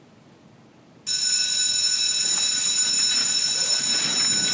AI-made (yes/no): no